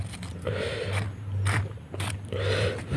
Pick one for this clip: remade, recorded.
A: recorded